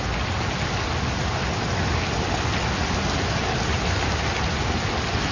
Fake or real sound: real